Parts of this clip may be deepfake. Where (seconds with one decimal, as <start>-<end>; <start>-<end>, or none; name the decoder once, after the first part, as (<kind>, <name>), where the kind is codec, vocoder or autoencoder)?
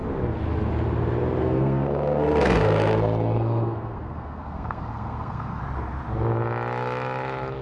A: 1.4-5.6 (codec, SNAC)